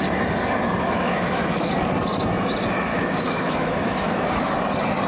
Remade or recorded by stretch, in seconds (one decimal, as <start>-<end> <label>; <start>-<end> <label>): 0.0-0.8 recorded; 0.8-1.7 remade; 1.7-2.9 recorded; 2.9-4.6 remade; 4.6-5.1 recorded